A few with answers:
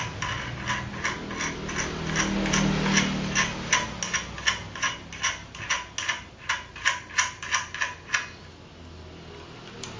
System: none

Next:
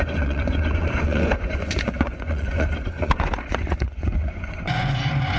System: vocoder, Vocos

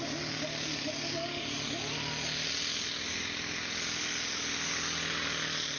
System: none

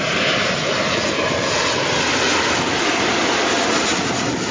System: none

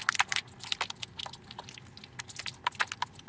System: none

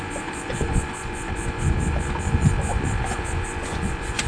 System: vocoder, Vocos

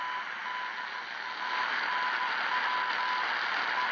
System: none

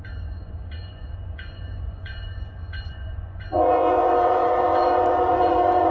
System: vocoder, Vocos